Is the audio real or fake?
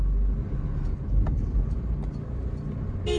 real